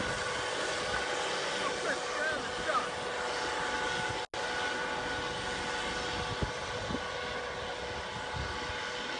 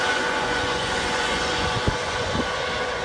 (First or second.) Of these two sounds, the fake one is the second